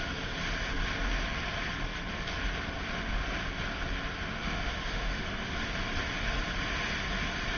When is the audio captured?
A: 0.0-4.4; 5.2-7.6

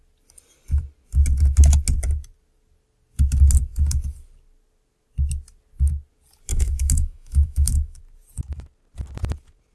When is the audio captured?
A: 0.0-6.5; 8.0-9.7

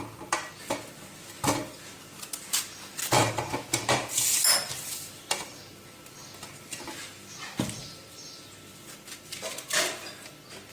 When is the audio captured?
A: 0.0-10.7

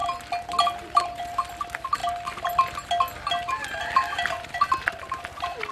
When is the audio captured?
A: 0.0-5.7

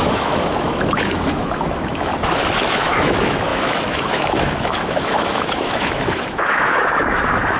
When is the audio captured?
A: 2.1-2.7

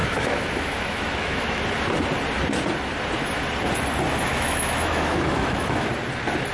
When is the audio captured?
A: 1.6-4.3; 5.9-6.5

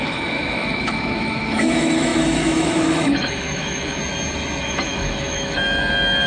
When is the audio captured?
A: 4.0-4.6

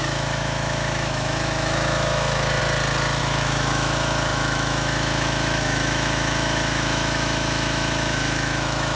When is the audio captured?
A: 2.6-3.2